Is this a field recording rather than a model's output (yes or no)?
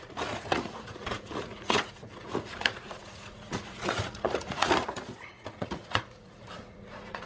no